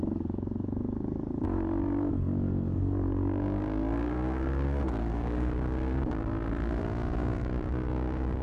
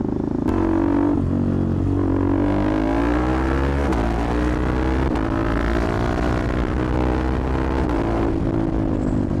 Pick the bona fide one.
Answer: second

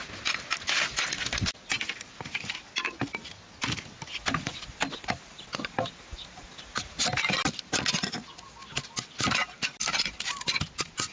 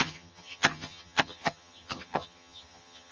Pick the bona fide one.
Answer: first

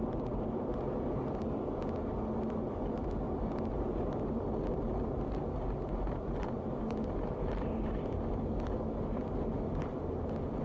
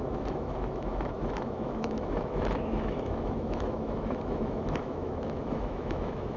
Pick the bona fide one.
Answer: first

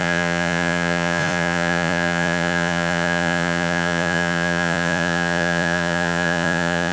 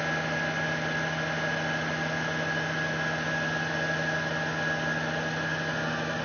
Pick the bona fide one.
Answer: second